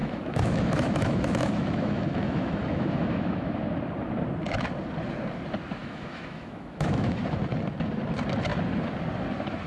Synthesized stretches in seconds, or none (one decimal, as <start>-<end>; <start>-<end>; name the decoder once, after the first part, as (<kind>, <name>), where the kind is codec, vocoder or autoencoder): 0.0-3.6 (autoencoder, DAC-VAE); 5.8-7.2